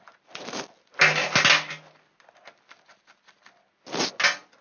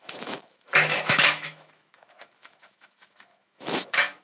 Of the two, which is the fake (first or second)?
second